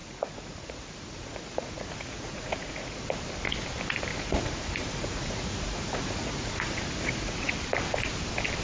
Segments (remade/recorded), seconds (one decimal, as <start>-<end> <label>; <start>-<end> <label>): 0.0-3.0 remade; 3.0-4.1 recorded; 4.1-7.5 remade; 7.5-8.6 recorded